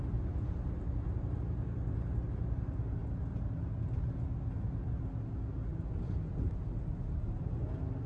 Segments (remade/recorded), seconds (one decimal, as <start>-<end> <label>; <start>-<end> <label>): 0.0-8.1 recorded